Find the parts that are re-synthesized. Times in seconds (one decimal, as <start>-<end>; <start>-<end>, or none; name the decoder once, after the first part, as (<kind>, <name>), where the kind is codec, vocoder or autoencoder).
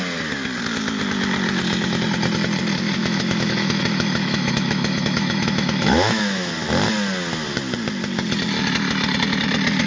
3.0-6.5 (autoencoder, DAC-VAE)